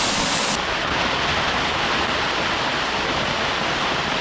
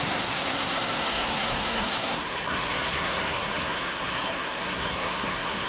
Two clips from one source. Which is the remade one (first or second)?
second